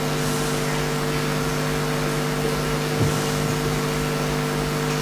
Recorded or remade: recorded